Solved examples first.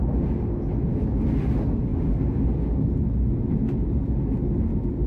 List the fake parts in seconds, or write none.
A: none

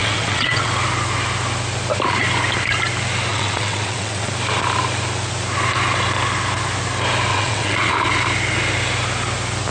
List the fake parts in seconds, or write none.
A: 0.0-0.7 (vocoder, WaveNeXt); 3.3-4.3; 7.3-7.9

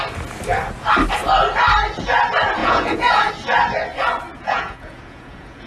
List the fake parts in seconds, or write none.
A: 2.6-3.3 (vocoder, Vocos); 4.3-5.7

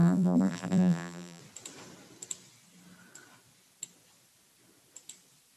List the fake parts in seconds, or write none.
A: 0.0-1.4 (vocoder, BigVGAN v2)

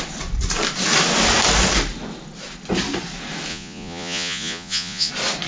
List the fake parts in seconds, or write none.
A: 3.5-5.1 (vocoder, Vocos)